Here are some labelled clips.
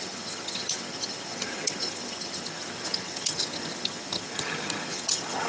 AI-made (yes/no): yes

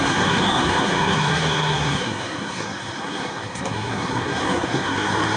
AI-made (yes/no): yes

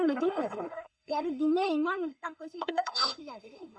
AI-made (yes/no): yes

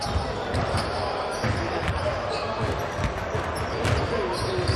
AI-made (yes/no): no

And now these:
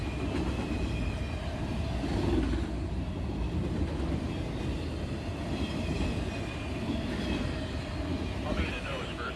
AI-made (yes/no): no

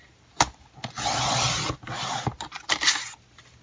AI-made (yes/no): no